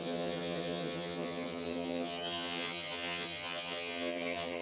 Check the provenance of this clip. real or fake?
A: fake